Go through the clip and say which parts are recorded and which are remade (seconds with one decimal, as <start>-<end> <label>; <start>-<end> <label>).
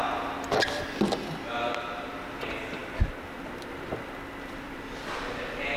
0.0-5.8 recorded